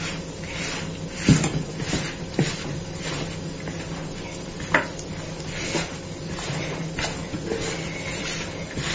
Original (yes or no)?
yes